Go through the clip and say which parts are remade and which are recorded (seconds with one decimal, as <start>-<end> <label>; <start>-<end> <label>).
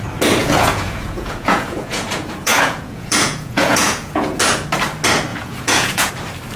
0.0-0.4 recorded; 0.4-4.4 remade; 4.4-5.3 recorded; 5.3-6.1 remade; 6.1-6.6 recorded